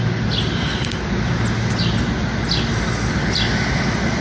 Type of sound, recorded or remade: recorded